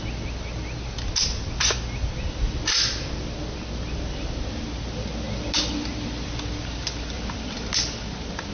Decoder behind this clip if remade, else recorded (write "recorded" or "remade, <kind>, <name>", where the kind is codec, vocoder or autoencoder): recorded